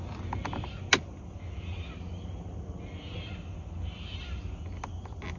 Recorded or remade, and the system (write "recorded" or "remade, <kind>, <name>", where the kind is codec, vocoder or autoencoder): recorded